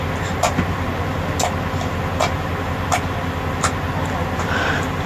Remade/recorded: recorded